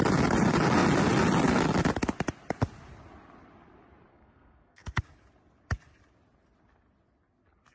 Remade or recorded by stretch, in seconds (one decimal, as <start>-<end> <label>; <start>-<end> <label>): 0.0-4.1 recorded; 4.1-5.0 remade; 5.0-7.7 recorded